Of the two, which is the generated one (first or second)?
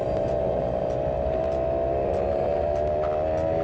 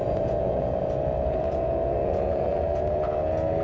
second